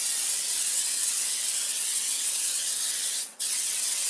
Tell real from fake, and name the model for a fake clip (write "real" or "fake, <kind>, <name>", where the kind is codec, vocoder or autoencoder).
fake, vocoder, WaveNeXt